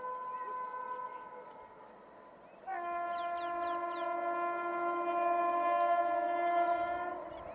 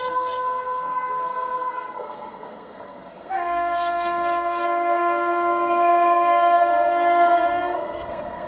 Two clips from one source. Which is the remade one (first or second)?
second